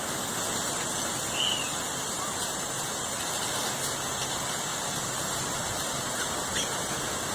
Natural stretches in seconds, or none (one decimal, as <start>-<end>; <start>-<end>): 0.0-7.3